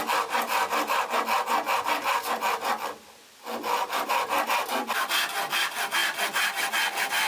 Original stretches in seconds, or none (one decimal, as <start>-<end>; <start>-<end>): 0.0-7.3